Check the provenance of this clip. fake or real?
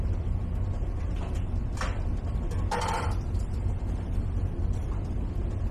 real